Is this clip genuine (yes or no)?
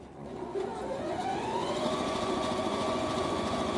no